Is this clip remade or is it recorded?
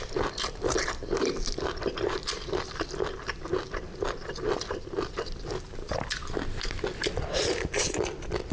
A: recorded